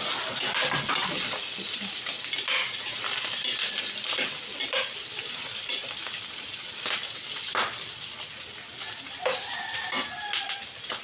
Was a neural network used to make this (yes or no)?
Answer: no